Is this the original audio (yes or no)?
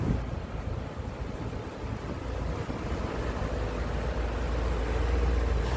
yes